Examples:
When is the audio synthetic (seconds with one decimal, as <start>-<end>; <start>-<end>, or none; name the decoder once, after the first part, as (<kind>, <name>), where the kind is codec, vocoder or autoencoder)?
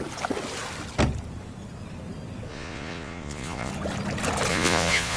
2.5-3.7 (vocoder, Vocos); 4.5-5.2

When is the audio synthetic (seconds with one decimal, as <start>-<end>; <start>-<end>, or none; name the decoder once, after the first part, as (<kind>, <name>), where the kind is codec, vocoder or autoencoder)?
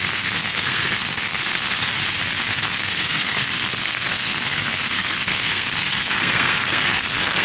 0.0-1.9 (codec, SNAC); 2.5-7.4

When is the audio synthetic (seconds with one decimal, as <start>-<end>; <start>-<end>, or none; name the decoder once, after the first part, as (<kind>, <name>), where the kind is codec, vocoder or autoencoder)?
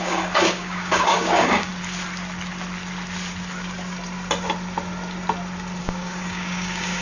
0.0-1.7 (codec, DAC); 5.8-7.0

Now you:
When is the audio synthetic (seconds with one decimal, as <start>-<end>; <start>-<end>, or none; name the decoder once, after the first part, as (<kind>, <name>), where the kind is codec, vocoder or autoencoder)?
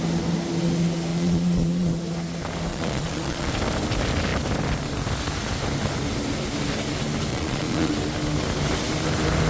1.1-1.9 (vocoder, Vocos); 2.7-3.5; 7.3-7.9